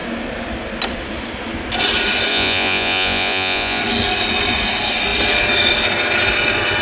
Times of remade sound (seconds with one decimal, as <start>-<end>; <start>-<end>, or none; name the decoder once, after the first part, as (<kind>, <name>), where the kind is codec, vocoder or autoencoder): 2.3-3.8 (vocoder, Vocos)